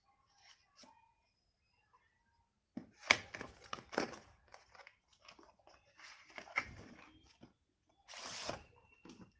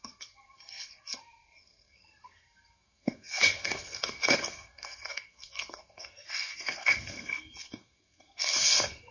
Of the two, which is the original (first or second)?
first